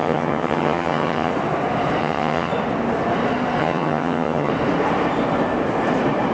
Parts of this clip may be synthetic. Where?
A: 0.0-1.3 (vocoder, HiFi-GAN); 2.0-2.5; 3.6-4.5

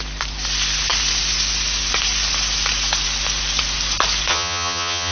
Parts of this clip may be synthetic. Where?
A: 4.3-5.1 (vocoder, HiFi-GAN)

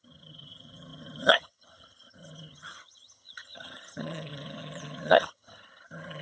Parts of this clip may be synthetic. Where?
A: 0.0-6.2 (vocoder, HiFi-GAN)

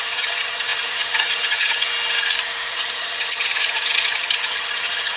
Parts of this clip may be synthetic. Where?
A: 0.0-1.9 (vocoder, HiFi-GAN); 2.7-5.2

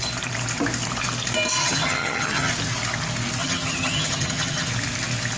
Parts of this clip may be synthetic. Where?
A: 1.6-2.5 (vocoder, HiFi-GAN); 3.4-4.7